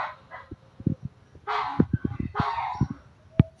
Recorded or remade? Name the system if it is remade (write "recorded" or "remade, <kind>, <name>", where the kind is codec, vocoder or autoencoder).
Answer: recorded